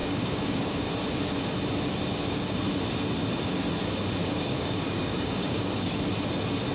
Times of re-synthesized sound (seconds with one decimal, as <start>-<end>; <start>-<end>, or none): 0.0-0.9; 2.1-2.6; 4.2-6.0